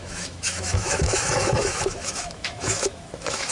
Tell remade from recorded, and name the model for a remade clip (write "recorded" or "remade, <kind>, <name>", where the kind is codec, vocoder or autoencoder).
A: remade, autoencoder, DAC-VAE